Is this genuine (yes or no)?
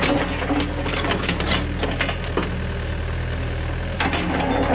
yes